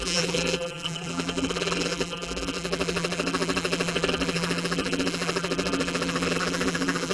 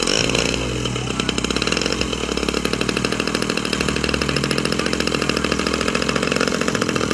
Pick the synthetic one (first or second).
first